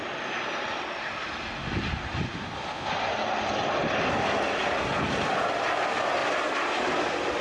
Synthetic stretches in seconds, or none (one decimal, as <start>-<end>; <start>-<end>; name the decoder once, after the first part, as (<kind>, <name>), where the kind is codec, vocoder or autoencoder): none